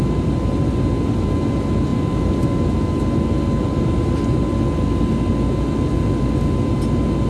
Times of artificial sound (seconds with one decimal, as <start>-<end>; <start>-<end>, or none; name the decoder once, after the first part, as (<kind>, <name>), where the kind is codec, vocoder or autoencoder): none